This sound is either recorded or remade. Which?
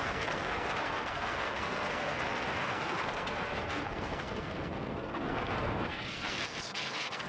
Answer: remade